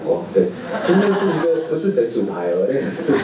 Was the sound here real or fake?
fake